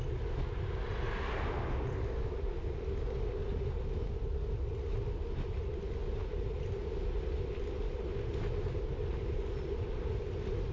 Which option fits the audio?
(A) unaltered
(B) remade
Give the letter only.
A